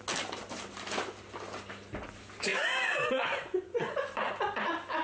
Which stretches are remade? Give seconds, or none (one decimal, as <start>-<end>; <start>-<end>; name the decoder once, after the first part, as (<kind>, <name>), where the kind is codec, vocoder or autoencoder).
2.5-4.3 (vocoder, Vocos)